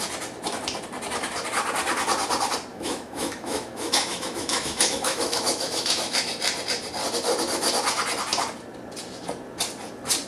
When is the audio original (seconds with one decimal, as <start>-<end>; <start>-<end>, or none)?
0.0-2.7; 6.3-10.3